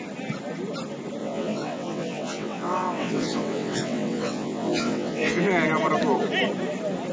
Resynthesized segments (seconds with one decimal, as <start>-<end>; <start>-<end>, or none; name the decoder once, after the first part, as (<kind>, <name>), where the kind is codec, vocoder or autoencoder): 1.2-5.5 (vocoder, WaveNeXt)